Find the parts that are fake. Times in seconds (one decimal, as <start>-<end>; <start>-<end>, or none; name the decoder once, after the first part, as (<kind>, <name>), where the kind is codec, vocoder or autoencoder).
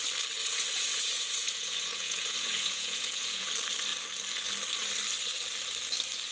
0.4-3.5 (vocoder, Vocos)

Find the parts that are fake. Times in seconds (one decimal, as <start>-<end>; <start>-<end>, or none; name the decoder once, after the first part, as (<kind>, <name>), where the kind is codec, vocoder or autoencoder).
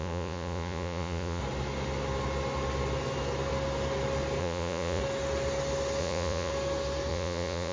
0.0-1.4 (vocoder, Vocos); 4.4-5.0; 6.0-6.5; 7.1-7.7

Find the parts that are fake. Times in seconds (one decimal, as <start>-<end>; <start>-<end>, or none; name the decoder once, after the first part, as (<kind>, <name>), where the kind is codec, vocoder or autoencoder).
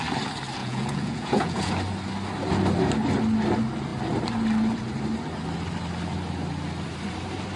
0.6-1.7 (vocoder, Vocos)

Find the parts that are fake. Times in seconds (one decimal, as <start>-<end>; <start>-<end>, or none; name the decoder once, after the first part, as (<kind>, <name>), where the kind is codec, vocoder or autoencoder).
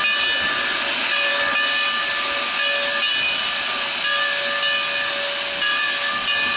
none